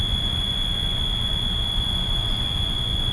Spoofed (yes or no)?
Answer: yes